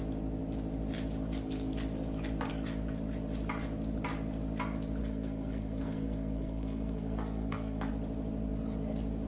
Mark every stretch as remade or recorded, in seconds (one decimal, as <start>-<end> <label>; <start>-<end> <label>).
0.0-5.0 recorded; 5.0-7.9 remade; 7.9-9.3 recorded